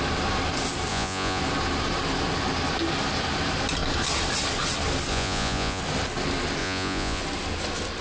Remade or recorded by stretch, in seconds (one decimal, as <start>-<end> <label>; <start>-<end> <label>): 0.0-0.9 recorded; 0.9-1.4 remade; 1.4-5.1 recorded; 5.1-5.8 remade; 5.8-6.6 recorded; 6.6-7.2 remade; 7.2-8.0 recorded